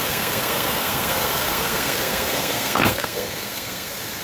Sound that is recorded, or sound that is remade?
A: remade